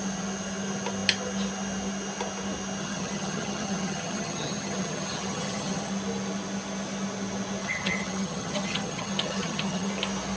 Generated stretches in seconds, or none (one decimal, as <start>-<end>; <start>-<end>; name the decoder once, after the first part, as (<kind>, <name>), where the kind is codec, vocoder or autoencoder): 2.8-5.9 (vocoder, HiFi-GAN); 7.6-9.9